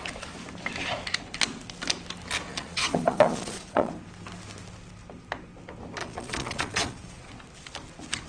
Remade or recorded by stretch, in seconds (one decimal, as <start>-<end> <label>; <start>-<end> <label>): 0.0-2.5 recorded; 2.5-3.9 remade; 3.9-6.0 recorded; 6.0-7.3 remade; 7.3-8.3 recorded